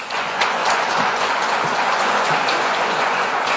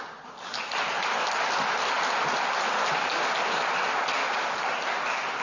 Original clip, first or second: second